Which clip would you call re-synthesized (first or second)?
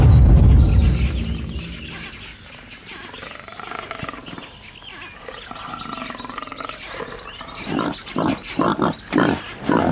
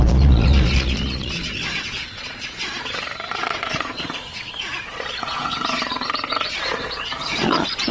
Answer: second